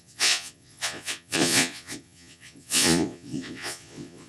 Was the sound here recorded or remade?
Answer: remade